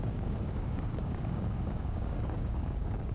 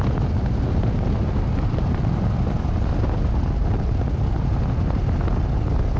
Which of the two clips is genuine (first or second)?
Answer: second